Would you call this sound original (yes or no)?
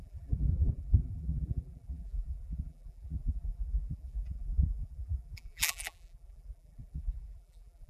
no